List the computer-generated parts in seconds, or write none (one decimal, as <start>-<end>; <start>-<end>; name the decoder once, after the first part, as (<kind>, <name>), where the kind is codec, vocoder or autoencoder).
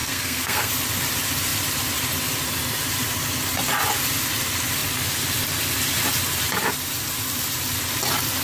0.0-0.7 (codec, SNAC)